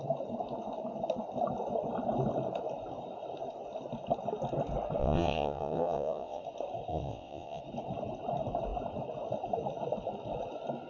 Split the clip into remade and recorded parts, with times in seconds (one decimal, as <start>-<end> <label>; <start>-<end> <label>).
0.0-5.0 recorded; 5.0-6.4 remade; 6.4-6.9 recorded; 6.9-7.6 remade; 7.6-10.9 recorded